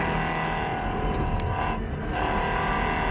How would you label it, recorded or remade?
recorded